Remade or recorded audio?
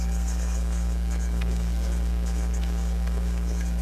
remade